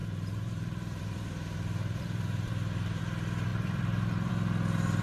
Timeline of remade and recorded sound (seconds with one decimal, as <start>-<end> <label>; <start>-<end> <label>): 0.0-3.0 remade; 3.0-3.5 recorded; 3.5-4.3 remade; 4.3-5.0 recorded